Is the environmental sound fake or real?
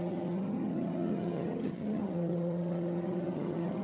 fake